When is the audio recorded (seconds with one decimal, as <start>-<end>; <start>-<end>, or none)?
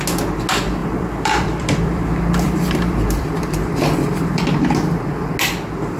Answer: 0.0-0.8; 4.4-6.0